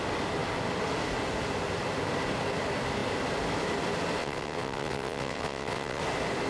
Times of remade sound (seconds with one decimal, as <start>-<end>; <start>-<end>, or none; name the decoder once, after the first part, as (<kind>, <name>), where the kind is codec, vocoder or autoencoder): 4.2-6.0 (vocoder, WaveNeXt)